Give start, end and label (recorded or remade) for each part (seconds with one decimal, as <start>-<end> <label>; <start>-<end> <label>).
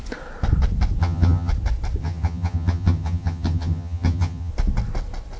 0.0-1.0 recorded; 1.0-1.5 remade; 1.5-2.0 recorded; 2.0-4.5 remade; 4.5-5.4 recorded